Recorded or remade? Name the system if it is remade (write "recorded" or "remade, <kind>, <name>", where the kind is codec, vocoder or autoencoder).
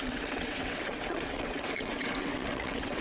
remade, vocoder, WaveNeXt